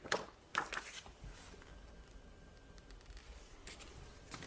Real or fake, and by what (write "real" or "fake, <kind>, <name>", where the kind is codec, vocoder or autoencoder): real